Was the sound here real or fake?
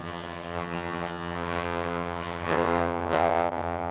fake